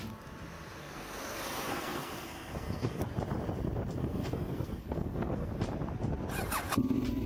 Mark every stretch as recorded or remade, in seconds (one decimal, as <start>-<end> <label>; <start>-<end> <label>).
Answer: 0.0-0.8 recorded; 0.8-3.0 remade; 3.0-4.0 recorded; 4.0-5.5 remade; 5.5-7.3 recorded